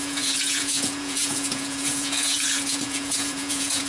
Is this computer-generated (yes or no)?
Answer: yes